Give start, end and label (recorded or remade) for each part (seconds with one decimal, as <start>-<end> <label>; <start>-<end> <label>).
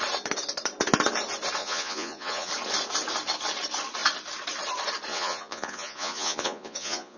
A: 0.0-1.6 recorded; 1.6-2.5 remade; 2.5-5.1 recorded; 5.1-7.2 remade